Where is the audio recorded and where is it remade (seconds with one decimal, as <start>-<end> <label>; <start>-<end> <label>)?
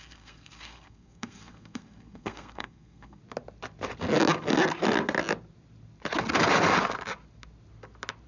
0.0-3.2 remade; 3.2-8.3 recorded